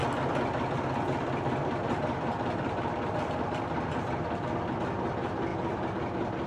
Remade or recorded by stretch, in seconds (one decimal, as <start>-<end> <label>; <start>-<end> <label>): 0.0-1.6 recorded; 1.6-4.1 remade; 4.1-5.5 recorded; 5.5-6.5 remade